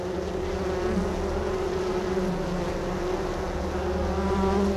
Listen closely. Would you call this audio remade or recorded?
recorded